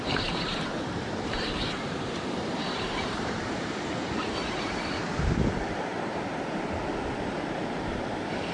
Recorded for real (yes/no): no